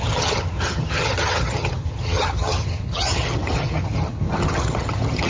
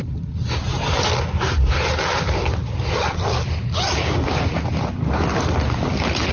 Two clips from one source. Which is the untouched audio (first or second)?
second